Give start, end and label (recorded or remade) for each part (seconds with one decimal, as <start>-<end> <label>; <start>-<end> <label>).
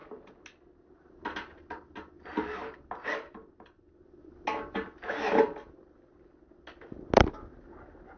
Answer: 0.0-8.2 recorded